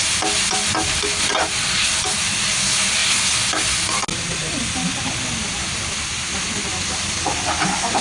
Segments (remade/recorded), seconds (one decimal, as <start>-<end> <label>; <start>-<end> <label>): 0.0-8.0 recorded